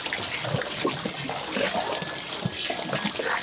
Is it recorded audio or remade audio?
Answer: recorded